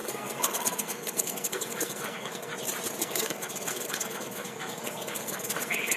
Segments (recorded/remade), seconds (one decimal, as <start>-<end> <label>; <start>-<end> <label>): 0.0-2.5 remade; 2.5-3.0 recorded; 3.0-6.0 remade